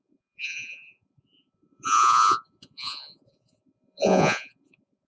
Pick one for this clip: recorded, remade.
remade